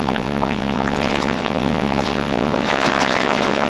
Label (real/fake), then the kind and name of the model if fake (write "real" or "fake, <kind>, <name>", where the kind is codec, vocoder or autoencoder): fake, vocoder, WaveNeXt